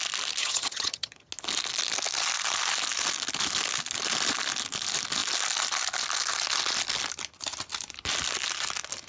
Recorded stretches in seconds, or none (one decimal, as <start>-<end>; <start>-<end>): 0.0-0.4; 1.3-9.1